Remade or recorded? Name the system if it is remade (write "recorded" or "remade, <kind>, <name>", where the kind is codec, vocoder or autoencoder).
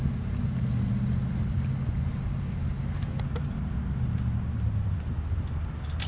recorded